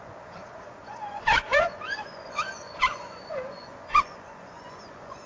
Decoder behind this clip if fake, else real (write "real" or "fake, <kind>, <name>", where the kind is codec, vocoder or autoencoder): fake, vocoder, Vocos